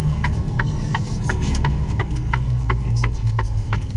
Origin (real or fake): fake